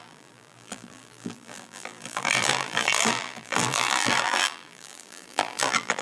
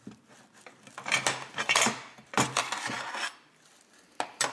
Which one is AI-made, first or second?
first